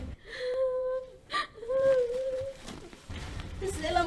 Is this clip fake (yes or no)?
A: yes